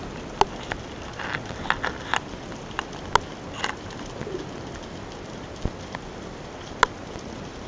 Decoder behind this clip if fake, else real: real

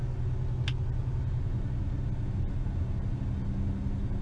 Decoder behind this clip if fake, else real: real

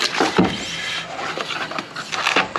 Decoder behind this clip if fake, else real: real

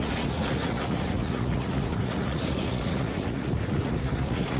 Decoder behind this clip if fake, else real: fake, vocoder, Vocos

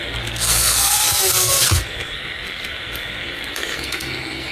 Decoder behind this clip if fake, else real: fake, codec, SNAC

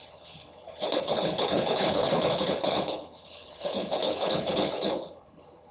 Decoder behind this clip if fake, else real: fake, codec, HILCodec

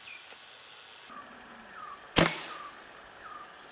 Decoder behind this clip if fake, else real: real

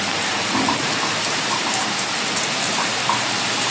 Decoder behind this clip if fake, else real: fake, vocoder, BigVGAN v2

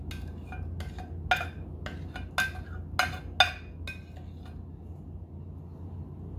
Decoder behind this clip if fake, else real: real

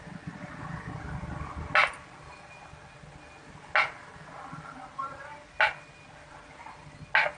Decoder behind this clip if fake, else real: real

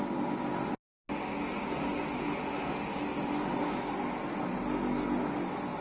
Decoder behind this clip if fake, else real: real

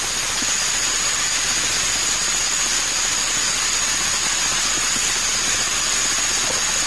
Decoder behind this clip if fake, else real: real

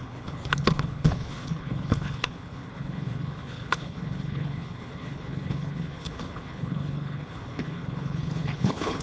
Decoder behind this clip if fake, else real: fake, codec, HILCodec